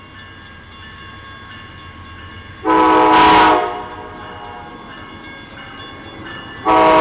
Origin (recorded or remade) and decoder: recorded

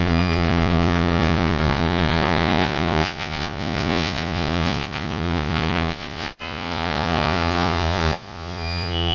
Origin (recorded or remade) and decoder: remade, vocoder, Vocos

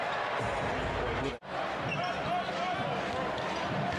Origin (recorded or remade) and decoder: recorded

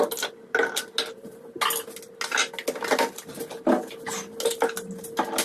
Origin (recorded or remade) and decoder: recorded